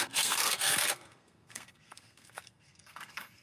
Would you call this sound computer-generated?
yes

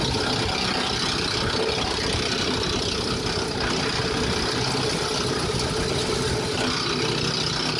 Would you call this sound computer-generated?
no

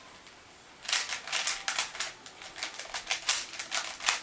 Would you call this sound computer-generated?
no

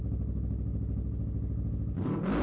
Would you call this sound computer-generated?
no